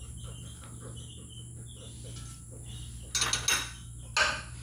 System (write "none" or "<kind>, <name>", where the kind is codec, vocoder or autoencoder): none